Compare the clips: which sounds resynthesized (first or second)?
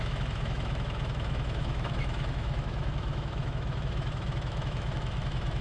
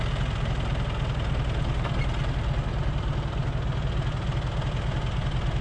first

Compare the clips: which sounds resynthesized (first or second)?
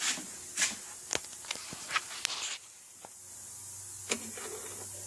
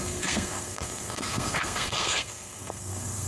second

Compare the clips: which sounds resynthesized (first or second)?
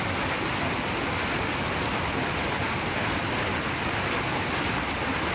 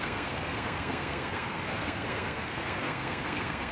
second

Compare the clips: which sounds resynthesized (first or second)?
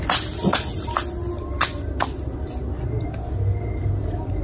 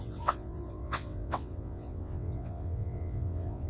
second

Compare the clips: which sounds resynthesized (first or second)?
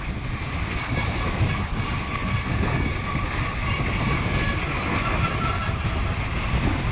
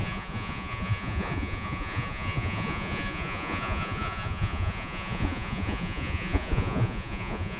second